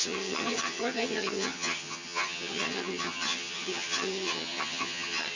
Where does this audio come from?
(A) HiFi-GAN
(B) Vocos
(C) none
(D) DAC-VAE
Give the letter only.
A